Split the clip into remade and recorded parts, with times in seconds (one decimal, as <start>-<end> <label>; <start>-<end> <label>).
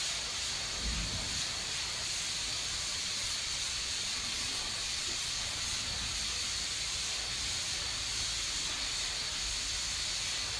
0.0-2.9 recorded; 2.9-5.8 remade; 5.8-10.6 recorded